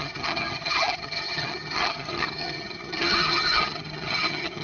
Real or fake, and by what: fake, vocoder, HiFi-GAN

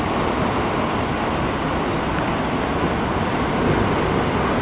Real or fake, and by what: real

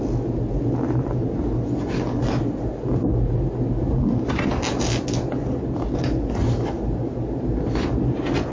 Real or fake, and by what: real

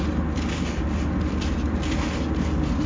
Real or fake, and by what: real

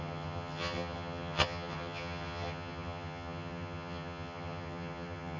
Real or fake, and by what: fake, vocoder, HiFi-GAN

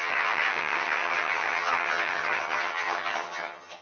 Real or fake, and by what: fake, vocoder, HiFi-GAN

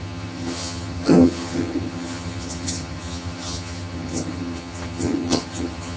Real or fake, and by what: fake, vocoder, HiFi-GAN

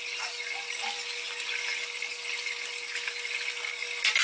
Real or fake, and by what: real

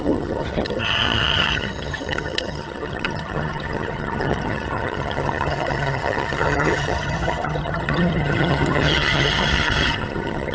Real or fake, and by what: fake, vocoder, HiFi-GAN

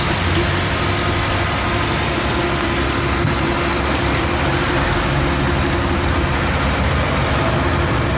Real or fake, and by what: real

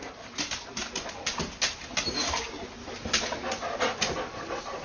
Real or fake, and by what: real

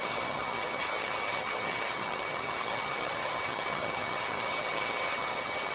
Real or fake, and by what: fake, vocoder, HiFi-GAN